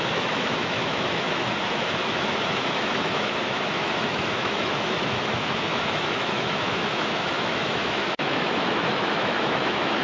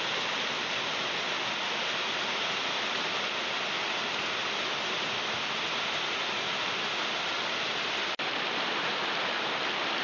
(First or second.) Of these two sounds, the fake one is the first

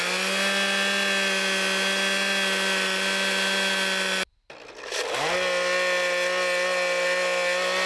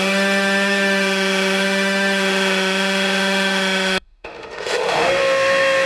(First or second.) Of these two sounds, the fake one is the second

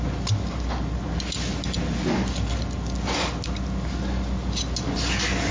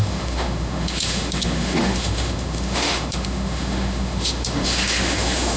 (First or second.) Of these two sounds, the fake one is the second